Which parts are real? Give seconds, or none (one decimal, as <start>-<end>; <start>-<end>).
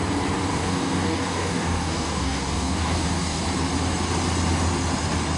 0.0-0.5; 3.4-5.4